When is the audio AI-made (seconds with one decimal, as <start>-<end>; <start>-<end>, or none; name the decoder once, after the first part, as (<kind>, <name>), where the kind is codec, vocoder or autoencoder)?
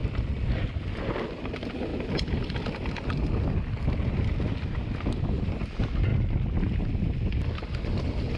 0.0-0.6 (vocoder, BigVGAN v2); 7.4-8.4